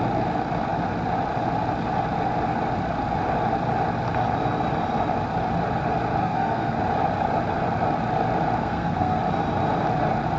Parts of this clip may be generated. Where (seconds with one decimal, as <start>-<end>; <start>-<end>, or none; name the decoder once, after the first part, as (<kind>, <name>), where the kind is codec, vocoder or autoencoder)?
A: 6.2-6.8 (codec, SNAC); 8.6-9.2